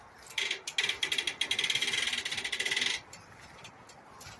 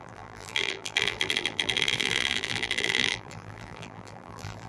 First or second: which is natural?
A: first